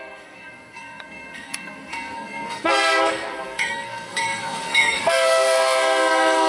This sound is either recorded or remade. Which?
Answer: remade